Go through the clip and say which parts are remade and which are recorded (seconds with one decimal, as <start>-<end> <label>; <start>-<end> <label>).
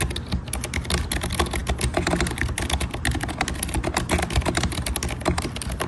0.0-5.9 recorded